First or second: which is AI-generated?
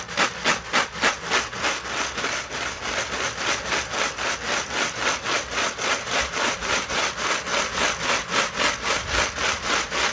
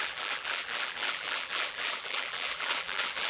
second